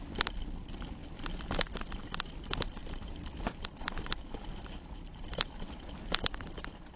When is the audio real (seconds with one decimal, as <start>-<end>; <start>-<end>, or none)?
0.0-2.8